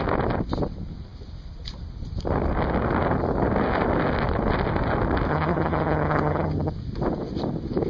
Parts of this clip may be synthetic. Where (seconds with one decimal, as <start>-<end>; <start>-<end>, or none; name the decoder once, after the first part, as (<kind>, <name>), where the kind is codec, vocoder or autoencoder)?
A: 5.3-6.7 (vocoder, HiFi-GAN)